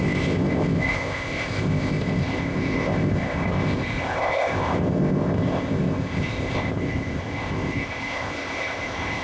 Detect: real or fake fake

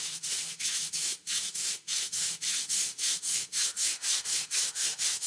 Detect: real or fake fake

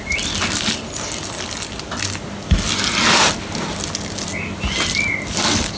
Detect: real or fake real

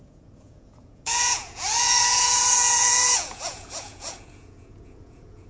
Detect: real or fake fake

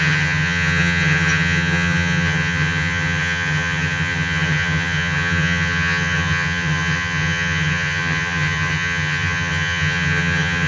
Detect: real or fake fake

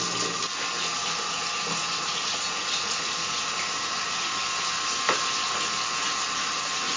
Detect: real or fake real